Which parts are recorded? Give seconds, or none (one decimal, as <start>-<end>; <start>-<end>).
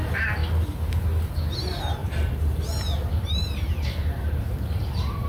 0.0-2.0